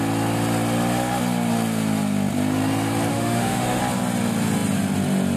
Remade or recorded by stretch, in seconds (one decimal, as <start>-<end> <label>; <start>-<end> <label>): 0.0-3.1 recorded; 3.1-3.8 remade; 3.8-5.4 recorded